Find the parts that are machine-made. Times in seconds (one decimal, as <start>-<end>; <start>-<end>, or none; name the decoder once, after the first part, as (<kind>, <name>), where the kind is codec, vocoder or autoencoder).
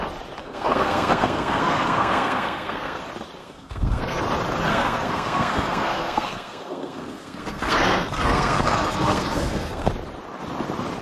0.4-3.0 (codec, SNAC); 3.4-4.2; 4.7-9.9